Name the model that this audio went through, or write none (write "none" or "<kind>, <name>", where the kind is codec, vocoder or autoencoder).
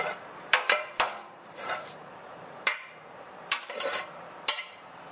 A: vocoder, BigVGAN v2